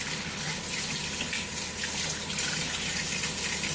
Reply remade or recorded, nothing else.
recorded